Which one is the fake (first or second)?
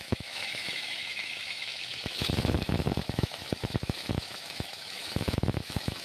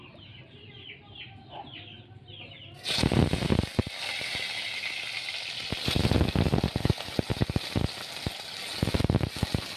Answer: first